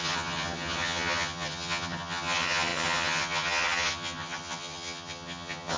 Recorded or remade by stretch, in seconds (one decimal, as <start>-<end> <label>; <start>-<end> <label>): 0.0-5.8 remade